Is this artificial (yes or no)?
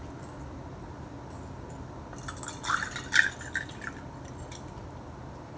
no